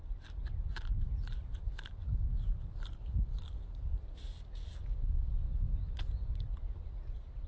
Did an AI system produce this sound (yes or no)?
no